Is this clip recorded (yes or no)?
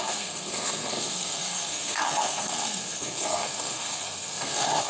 no